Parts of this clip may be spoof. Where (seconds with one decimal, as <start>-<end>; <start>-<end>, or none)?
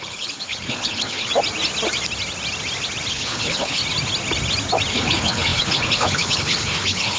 0.0-1.3; 3.1-3.8; 4.9-7.2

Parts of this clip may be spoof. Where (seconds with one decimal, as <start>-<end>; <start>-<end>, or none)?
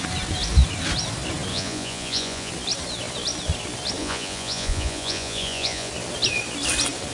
1.5-2.5; 4.0-5.9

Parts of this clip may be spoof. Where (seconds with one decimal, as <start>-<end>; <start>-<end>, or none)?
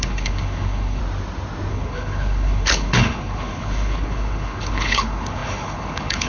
0.0-1.0; 1.7-6.3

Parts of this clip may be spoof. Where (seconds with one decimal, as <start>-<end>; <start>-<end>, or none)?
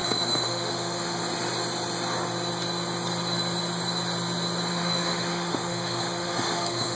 0.0-1.2; 4.7-6.9